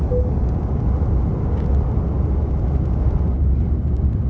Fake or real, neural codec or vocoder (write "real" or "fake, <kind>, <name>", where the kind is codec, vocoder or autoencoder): real